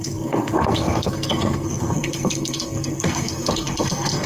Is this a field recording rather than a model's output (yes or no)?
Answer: no